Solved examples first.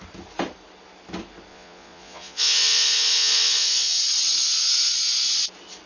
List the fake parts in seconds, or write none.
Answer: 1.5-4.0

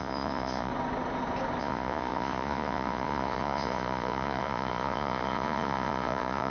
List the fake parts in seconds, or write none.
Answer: 0.0-0.7; 1.6-6.5

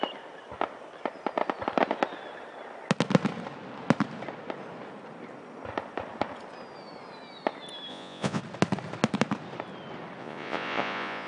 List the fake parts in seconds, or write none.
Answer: 7.9-8.4; 10.2-11.3

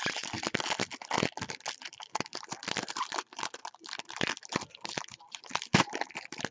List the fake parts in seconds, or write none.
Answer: none

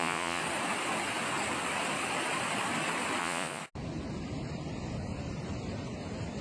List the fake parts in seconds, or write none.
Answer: 0.0-0.4; 3.2-3.6

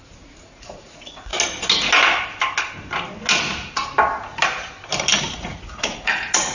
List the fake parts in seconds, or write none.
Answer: 0.0-1.3; 5.2-6.5

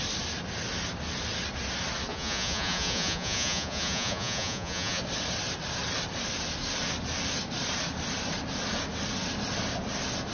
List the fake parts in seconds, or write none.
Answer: 2.1-5.0

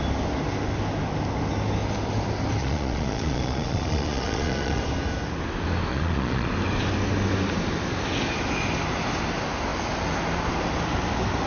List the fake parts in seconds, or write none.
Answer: 2.6-4.8; 5.9-6.5